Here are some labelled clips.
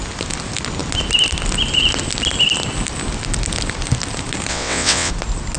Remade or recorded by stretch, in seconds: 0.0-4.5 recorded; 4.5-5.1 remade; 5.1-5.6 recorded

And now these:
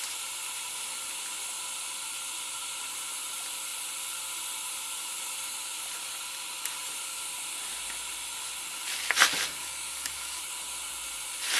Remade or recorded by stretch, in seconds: 0.0-9.6 recorded; 9.6-10.4 remade; 10.4-11.6 recorded

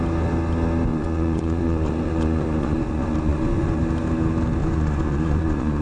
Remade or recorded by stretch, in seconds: 0.0-0.9 recorded; 0.9-3.8 remade; 3.8-4.6 recorded; 4.6-5.8 remade